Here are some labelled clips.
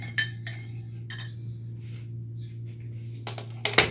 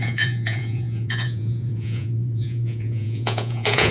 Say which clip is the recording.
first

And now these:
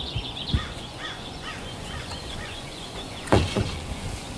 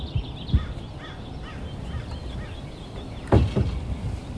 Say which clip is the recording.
second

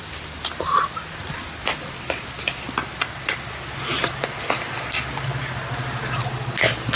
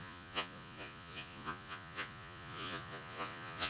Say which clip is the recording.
first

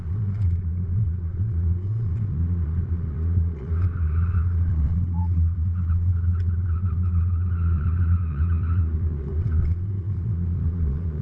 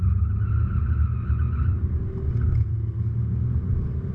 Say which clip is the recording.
second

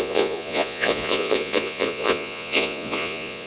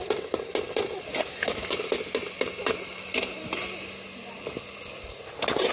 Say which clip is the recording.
second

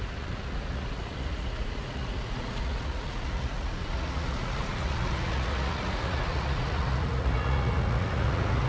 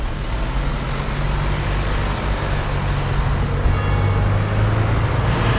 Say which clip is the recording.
second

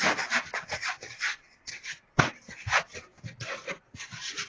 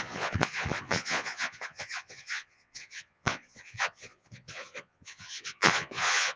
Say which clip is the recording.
first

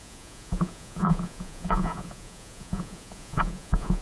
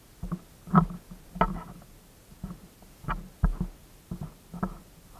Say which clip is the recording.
second